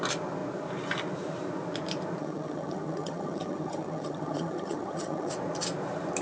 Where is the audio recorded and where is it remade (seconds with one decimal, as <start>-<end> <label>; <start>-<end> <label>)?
0.0-2.2 recorded; 2.2-5.3 remade; 5.3-6.2 recorded